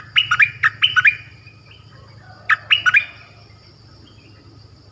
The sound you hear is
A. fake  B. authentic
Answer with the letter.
B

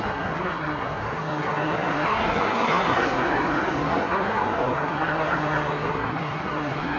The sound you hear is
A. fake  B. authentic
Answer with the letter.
A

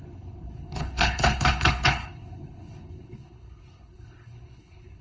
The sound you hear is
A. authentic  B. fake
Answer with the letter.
B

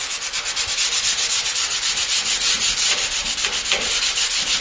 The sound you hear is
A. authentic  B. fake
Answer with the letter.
A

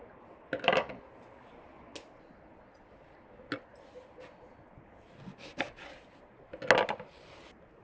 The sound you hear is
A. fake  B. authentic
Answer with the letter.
B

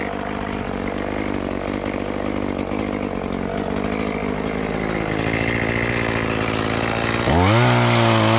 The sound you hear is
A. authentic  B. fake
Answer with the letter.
A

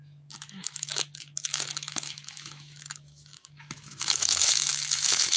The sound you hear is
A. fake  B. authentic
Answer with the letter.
A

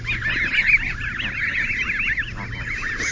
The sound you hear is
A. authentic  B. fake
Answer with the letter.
A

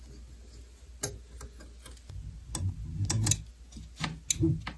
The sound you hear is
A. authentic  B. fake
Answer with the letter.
A